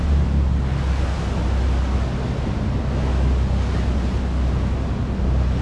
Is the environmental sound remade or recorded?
recorded